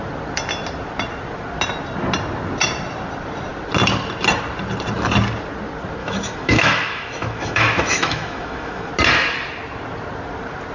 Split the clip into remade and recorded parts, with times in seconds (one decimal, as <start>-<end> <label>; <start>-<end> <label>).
0.0-6.0 recorded; 6.0-8.9 remade; 8.9-10.7 recorded